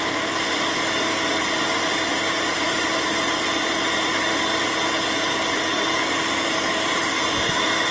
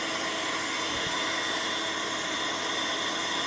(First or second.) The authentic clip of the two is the second